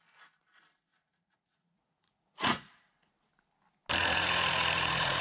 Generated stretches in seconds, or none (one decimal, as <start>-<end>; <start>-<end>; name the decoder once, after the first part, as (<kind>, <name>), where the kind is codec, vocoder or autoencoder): 0.9-2.9 (vocoder, Vocos); 4.0-5.2